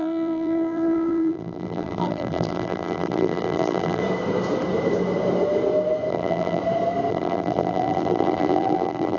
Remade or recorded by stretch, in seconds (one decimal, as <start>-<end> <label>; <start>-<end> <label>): 0.0-4.0 remade; 4.0-6.1 recorded; 6.1-6.6 remade; 6.6-7.1 recorded; 7.1-9.2 remade